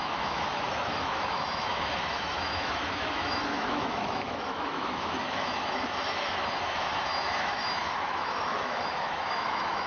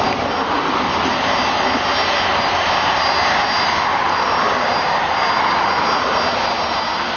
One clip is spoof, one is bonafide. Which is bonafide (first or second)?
second